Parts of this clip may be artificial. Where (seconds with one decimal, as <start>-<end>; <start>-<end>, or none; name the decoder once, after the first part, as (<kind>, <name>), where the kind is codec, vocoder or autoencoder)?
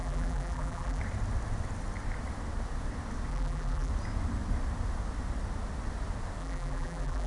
0.0-1.0 (vocoder, BigVGAN v2); 3.3-3.9; 6.4-7.3